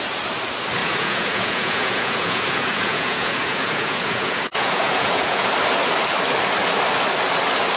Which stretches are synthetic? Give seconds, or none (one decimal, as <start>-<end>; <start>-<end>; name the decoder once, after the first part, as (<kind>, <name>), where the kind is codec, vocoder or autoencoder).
0.8-5.5 (vocoder, Vocos)

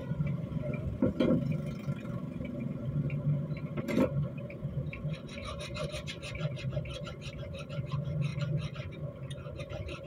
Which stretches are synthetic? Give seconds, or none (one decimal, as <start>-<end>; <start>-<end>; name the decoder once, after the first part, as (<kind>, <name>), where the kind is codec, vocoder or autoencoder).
0.0-8.3 (vocoder, BigVGAN v2); 9.6-10.1

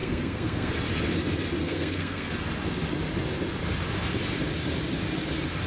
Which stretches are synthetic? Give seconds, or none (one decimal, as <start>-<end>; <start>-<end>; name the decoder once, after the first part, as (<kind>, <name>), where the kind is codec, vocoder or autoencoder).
0.0-0.7 (codec, SNAC); 1.6-2.3

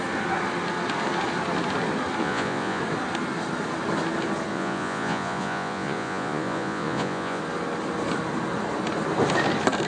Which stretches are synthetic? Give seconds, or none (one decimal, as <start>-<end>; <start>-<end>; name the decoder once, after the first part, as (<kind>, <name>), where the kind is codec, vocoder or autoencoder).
2.2-2.8 (vocoder, Vocos); 4.5-7.4

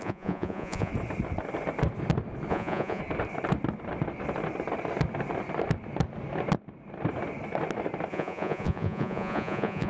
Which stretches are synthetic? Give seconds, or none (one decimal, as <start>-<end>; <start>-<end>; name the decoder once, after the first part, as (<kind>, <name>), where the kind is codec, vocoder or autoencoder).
0.0-0.9 (vocoder, Vocos); 2.5-3.0; 8.1-9.9

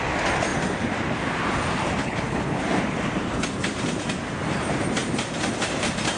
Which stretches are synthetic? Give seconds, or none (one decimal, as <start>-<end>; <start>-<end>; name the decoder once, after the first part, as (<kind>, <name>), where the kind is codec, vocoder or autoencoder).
2.0-2.6 (codec, HILCodec)

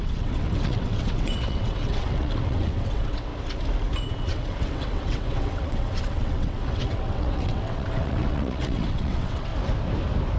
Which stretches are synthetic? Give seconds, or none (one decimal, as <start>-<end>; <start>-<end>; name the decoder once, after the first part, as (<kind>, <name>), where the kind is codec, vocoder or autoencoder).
0.0-3.3 (vocoder, WaveNeXt); 4.1-9.5

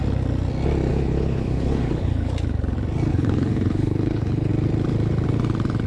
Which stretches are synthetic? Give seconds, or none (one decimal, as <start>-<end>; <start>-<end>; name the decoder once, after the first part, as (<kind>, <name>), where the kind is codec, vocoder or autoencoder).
0.9-2.3 (codec, HILCodec); 3.1-4.5